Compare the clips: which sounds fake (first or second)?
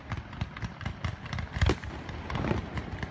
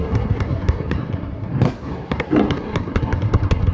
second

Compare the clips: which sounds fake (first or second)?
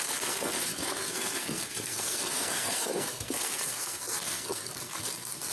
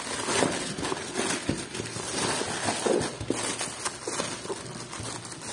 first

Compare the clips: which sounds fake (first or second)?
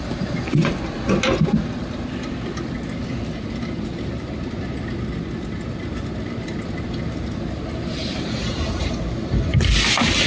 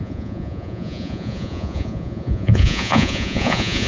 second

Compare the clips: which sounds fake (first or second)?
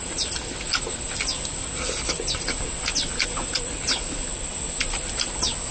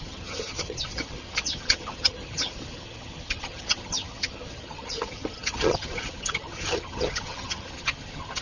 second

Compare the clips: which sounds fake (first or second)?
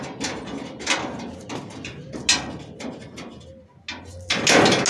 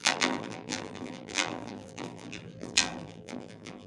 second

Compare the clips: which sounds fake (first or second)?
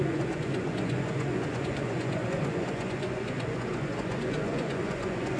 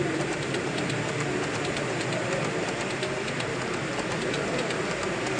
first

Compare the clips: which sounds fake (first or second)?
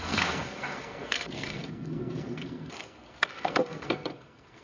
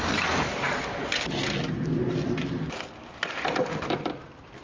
first